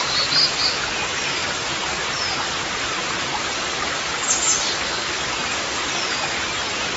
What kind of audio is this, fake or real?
real